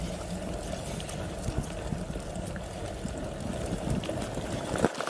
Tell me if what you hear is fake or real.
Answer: real